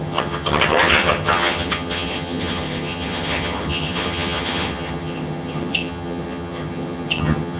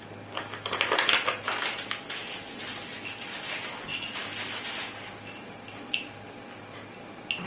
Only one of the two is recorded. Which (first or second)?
second